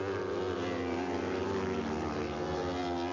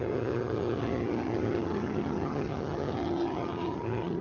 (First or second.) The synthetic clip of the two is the second